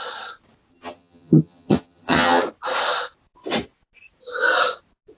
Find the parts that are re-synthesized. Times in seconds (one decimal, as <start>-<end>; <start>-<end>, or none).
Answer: 0.7-2.4